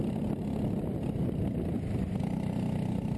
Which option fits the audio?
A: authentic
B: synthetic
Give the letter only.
A